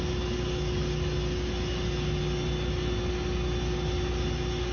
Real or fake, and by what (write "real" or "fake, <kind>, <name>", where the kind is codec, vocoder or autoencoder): real